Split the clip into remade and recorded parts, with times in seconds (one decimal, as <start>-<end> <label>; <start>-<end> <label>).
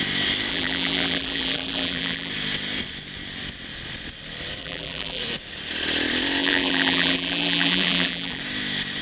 0.0-0.5 recorded; 0.5-2.3 remade; 2.3-4.6 recorded; 4.6-5.2 remade; 5.2-6.4 recorded; 6.4-8.4 remade; 8.4-9.0 recorded